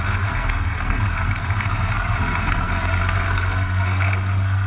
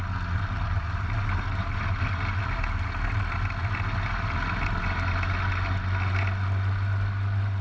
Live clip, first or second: second